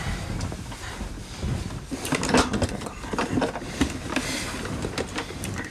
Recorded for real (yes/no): yes